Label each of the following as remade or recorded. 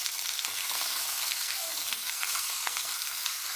remade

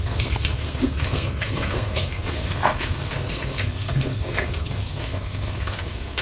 remade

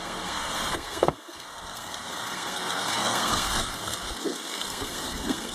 remade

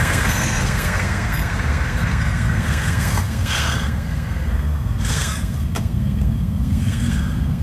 remade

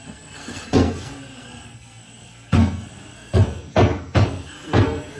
remade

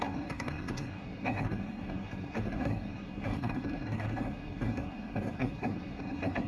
remade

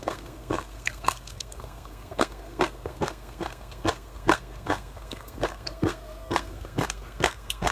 remade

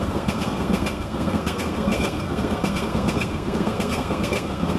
remade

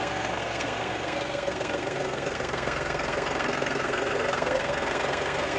remade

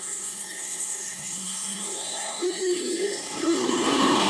remade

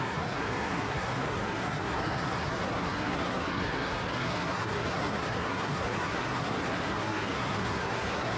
remade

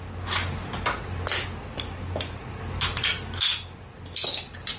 recorded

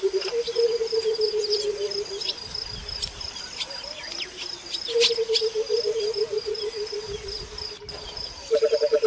recorded